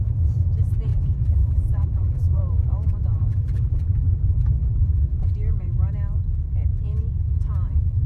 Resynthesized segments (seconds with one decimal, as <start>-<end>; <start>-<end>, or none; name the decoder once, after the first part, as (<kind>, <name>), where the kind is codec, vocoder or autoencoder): 0.9-2.4 (vocoder, BigVGAN v2); 3.1-5.3